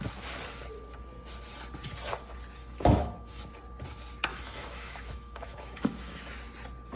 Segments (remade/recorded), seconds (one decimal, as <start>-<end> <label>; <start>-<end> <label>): 0.0-2.6 recorded; 2.6-3.4 remade; 3.4-4.3 recorded; 4.3-6.2 remade; 6.2-7.0 recorded